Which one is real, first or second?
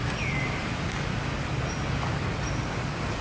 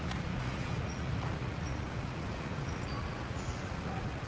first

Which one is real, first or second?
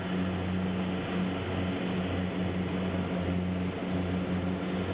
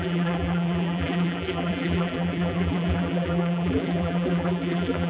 first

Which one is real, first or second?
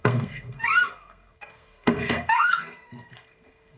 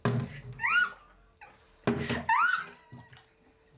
second